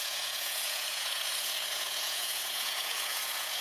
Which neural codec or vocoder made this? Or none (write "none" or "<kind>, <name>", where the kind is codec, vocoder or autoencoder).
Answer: vocoder, Vocos